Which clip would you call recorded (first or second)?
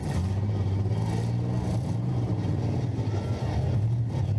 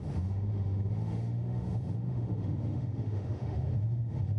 first